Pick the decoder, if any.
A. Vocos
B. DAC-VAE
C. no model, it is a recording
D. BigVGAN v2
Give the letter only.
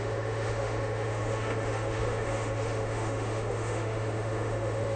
B